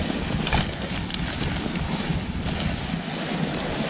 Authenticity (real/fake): real